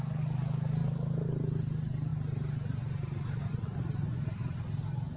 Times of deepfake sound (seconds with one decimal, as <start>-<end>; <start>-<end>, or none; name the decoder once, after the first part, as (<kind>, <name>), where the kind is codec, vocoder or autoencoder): none